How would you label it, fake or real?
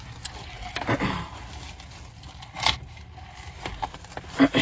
real